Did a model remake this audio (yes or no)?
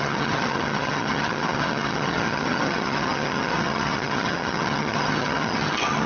yes